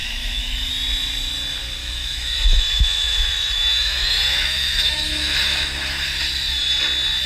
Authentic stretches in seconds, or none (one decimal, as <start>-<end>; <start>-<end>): 0.7-1.8; 6.2-7.3